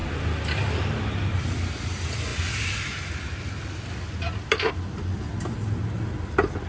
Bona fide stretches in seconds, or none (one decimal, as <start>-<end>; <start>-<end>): 0.0-6.7